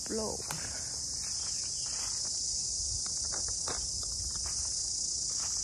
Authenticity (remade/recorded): recorded